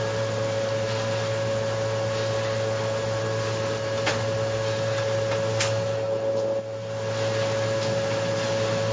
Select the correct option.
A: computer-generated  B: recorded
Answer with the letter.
B